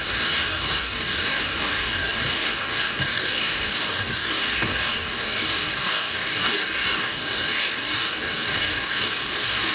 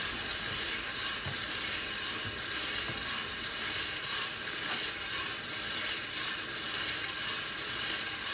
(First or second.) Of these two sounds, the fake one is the first